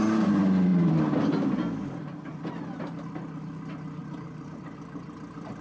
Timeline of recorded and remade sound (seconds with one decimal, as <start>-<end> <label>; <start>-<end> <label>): 0.0-4.0 recorded; 4.0-4.6 remade; 4.6-5.6 recorded